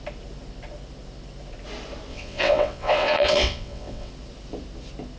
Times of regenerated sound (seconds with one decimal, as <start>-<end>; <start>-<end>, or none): 2.1-4.1